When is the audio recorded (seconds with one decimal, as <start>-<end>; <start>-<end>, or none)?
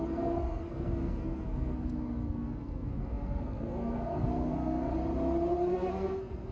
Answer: 4.9-5.7